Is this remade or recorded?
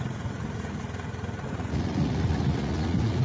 remade